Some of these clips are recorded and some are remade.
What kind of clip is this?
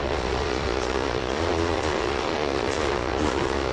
remade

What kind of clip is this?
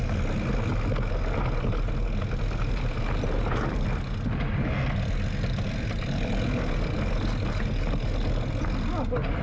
recorded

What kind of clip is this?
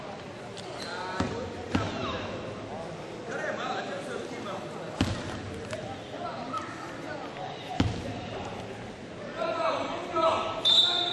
recorded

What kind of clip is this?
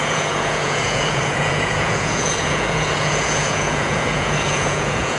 remade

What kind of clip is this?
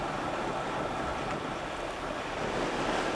recorded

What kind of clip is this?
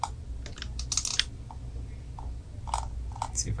recorded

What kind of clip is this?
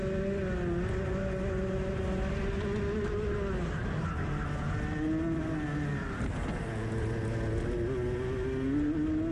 recorded